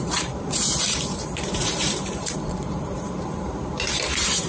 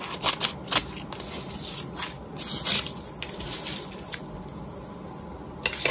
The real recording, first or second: second